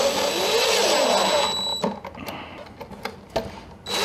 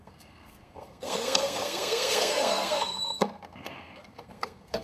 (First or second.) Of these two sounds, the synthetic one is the second